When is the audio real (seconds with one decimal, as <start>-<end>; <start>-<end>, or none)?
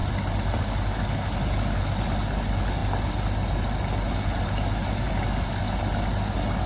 0.0-6.7